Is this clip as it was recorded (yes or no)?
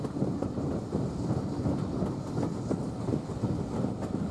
yes